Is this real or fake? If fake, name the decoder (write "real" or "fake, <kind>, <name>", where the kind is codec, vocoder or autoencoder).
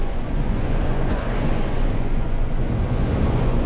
fake, vocoder, Vocos